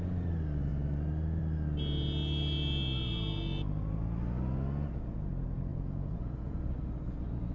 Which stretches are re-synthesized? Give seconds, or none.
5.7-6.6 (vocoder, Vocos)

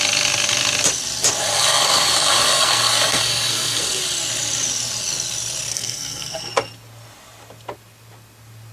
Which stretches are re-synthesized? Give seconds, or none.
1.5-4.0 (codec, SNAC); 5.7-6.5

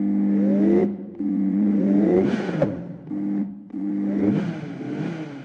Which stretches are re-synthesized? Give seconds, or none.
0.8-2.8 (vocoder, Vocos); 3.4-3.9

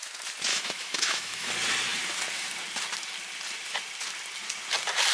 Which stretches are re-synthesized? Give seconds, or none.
0.5-1.5 (autoencoder, DAC-VAE)

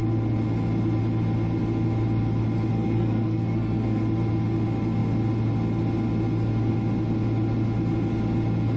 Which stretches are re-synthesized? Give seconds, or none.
2.7-4.0 (codec, SNAC)

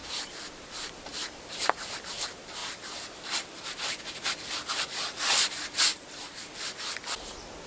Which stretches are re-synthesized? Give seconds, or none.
1.1-1.9 (vocoder, BigVGAN v2); 2.6-4.0; 5.9-6.5

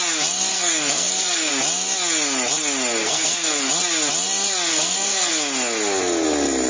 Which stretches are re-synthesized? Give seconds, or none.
0.5-1.5 (codec, SNAC); 3.0-3.7; 4.7-5.3

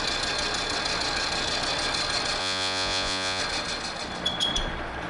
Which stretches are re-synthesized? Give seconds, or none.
2.4-3.4 (vocoder, Vocos)